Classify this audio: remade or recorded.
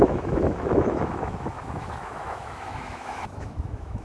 remade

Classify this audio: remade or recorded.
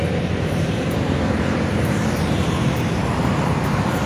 remade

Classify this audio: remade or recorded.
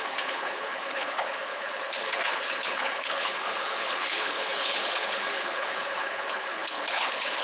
remade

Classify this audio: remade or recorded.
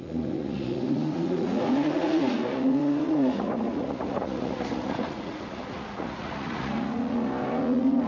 remade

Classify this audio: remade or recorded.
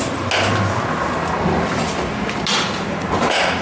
recorded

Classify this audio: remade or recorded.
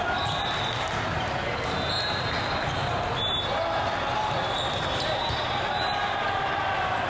recorded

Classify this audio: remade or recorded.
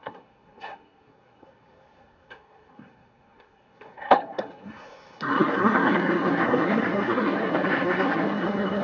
remade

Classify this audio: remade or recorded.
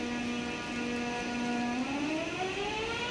recorded